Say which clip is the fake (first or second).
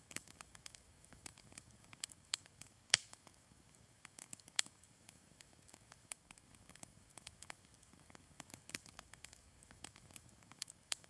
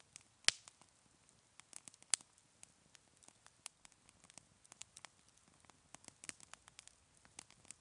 first